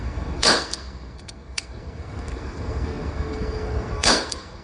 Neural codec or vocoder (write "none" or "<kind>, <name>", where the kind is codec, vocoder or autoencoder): codec, SNAC